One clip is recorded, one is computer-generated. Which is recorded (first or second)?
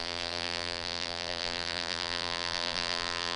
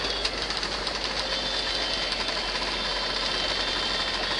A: second